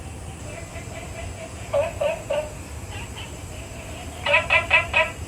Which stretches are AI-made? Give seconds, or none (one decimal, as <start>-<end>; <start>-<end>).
0.7-3.9